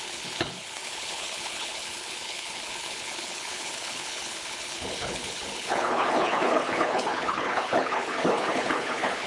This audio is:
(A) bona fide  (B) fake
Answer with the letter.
B